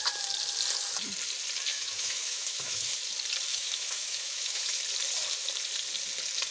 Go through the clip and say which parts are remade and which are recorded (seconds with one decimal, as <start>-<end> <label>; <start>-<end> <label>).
0.0-1.7 recorded; 1.7-2.9 remade; 2.9-3.5 recorded; 3.5-4.8 remade; 4.8-6.5 recorded